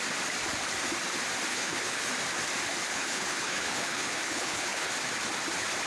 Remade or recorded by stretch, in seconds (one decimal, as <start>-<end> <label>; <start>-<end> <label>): 0.0-1.5 recorded; 1.5-2.1 remade; 2.1-2.9 recorded; 2.9-4.9 remade; 4.9-5.9 recorded